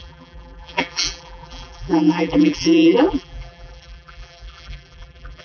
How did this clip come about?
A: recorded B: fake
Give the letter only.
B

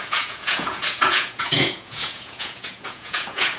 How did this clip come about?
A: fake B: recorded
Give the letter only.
A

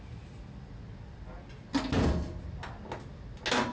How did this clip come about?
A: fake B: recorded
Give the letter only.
B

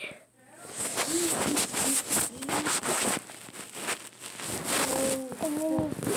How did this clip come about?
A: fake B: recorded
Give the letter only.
B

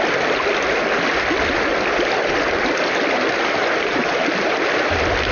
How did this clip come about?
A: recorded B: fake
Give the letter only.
A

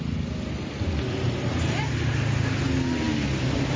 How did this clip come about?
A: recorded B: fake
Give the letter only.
A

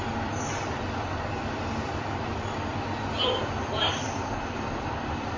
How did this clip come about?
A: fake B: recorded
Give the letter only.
A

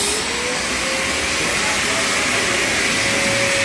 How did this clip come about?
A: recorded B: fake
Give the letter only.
A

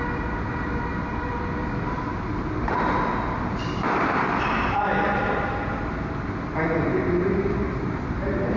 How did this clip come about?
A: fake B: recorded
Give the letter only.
B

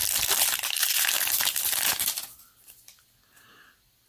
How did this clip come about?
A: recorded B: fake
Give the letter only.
A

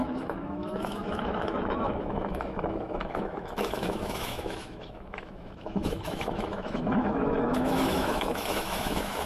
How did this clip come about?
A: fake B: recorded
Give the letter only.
A